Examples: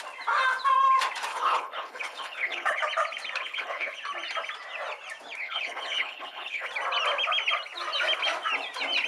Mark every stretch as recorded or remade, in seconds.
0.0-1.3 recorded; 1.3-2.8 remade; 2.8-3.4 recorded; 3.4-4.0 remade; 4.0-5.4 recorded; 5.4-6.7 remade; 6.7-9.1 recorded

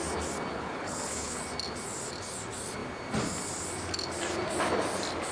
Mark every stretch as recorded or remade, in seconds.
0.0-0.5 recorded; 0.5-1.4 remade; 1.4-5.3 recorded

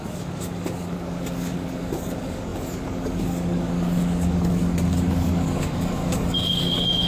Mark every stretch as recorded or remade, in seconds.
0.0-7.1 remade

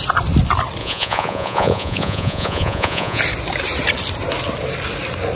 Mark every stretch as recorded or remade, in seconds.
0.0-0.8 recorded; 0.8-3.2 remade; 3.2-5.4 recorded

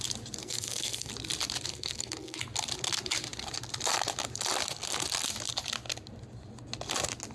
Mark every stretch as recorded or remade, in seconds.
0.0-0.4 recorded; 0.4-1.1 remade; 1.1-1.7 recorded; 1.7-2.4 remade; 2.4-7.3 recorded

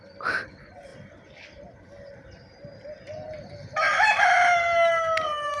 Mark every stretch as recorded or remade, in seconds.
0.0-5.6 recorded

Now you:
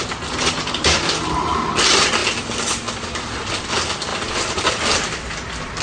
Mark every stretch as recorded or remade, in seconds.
0.0-5.8 recorded